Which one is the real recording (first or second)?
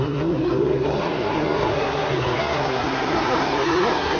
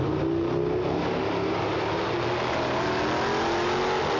second